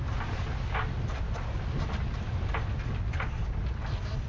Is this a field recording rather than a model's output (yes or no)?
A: yes